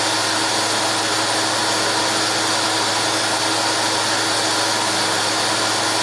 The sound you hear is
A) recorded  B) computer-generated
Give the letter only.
A